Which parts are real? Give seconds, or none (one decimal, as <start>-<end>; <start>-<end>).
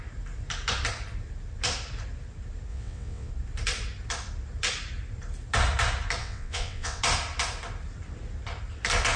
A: 0.0-2.7; 3.3-6.2; 7.0-9.2